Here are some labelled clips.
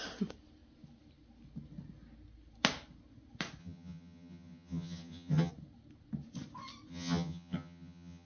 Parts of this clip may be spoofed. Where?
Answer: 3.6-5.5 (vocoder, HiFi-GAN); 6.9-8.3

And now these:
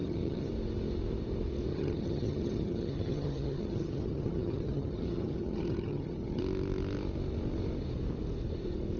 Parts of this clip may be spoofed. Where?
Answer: 0.0-0.5 (vocoder, HiFi-GAN); 1.7-6.4